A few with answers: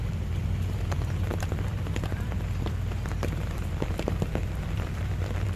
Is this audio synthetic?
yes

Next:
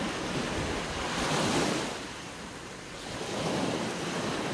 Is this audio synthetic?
no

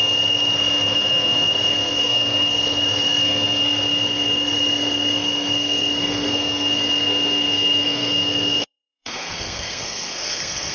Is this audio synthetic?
yes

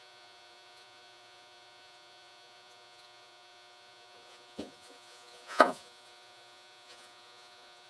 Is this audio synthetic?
yes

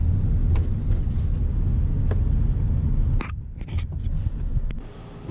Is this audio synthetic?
no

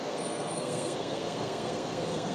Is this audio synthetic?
yes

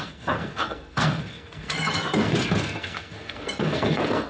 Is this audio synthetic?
yes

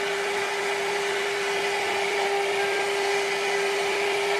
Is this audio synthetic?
no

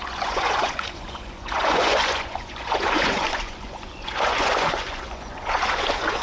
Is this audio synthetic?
yes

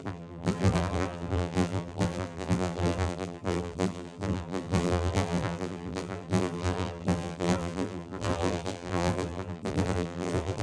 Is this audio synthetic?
yes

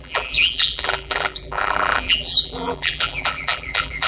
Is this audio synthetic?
yes